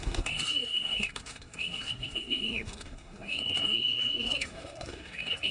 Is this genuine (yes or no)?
no